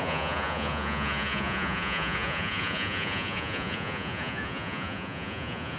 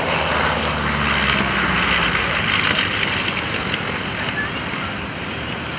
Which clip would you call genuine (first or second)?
second